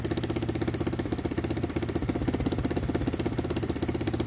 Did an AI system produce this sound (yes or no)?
no